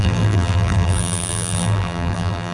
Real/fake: fake